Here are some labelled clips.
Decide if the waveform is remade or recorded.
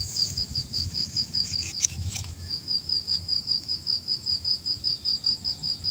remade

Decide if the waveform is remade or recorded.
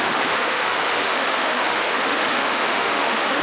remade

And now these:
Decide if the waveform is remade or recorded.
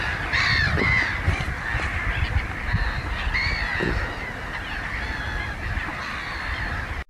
recorded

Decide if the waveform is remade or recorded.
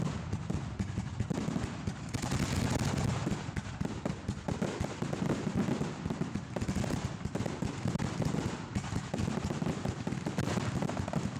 recorded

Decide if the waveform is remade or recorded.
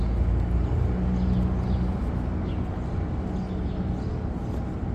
recorded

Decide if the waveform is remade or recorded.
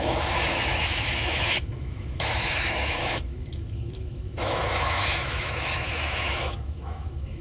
remade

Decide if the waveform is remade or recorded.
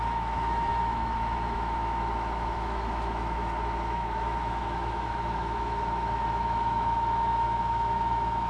remade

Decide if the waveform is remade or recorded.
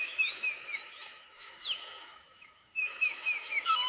remade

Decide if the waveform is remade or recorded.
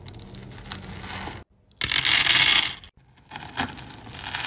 recorded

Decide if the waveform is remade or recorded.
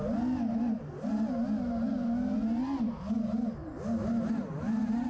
recorded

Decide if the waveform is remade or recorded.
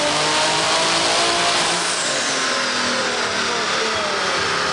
recorded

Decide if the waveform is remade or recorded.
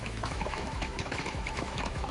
remade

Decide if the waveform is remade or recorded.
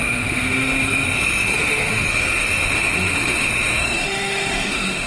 remade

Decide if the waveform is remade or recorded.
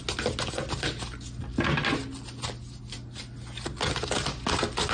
recorded